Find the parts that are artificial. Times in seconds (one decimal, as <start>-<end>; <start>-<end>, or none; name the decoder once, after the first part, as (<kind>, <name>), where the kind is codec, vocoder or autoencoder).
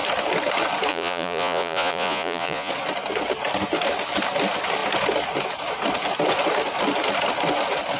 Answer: 0.9-2.7 (vocoder, Vocos)